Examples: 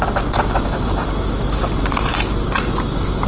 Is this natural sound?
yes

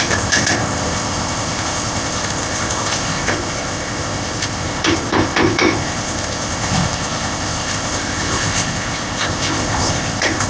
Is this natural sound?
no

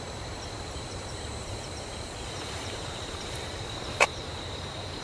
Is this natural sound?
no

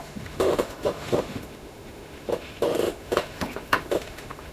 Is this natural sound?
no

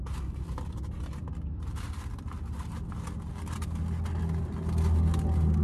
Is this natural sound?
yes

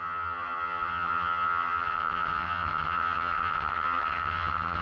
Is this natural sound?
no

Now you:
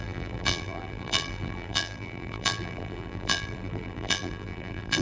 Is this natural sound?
no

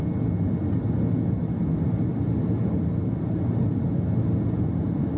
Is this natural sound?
yes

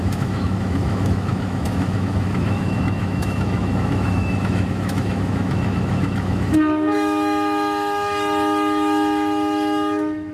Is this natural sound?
no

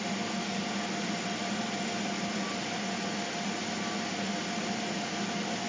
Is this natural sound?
yes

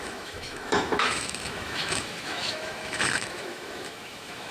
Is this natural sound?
no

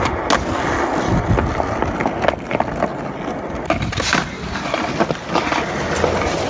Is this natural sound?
yes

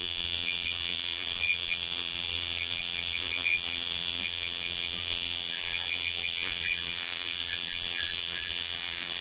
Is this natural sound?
no